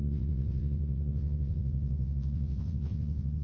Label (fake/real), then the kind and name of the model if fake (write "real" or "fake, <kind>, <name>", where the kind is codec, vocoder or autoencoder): fake, vocoder, WaveNeXt